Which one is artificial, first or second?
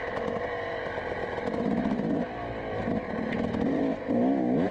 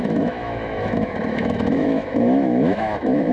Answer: second